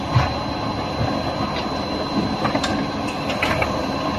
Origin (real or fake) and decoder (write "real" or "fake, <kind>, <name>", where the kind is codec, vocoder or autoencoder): real